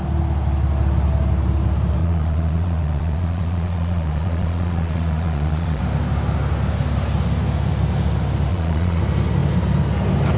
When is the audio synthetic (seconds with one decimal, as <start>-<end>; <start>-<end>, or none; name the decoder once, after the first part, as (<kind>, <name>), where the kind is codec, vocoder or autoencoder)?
2.0-5.8 (vocoder, Vocos); 8.5-9.0